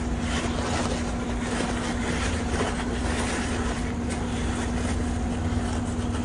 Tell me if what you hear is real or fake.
real